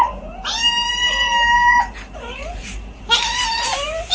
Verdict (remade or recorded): remade